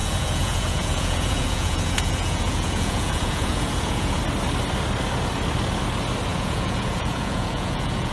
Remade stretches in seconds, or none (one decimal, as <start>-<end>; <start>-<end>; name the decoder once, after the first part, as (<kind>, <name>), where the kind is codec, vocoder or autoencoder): 0.0-4.2 (vocoder, Vocos); 6.3-8.1